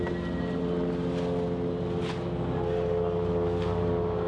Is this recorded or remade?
recorded